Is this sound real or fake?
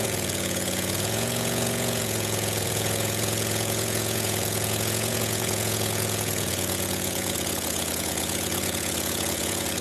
fake